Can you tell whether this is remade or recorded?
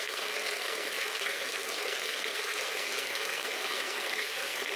remade